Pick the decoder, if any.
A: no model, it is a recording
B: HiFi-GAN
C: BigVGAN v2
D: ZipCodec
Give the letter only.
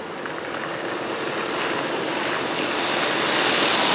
A